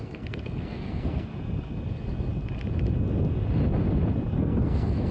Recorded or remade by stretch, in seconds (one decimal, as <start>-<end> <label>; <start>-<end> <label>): 0.0-1.3 remade; 1.3-4.4 recorded; 4.4-5.1 remade